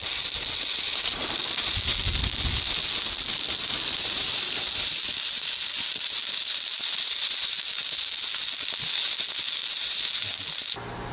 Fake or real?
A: real